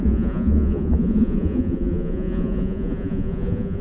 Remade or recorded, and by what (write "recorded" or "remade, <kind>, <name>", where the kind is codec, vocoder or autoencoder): remade, vocoder, Vocos